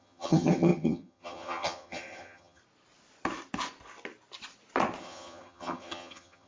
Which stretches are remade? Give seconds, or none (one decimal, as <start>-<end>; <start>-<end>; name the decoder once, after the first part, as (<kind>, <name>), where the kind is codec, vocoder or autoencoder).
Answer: 0.0-2.6 (vocoder, HiFi-GAN); 5.0-6.5